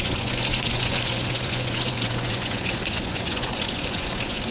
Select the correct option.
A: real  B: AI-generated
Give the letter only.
B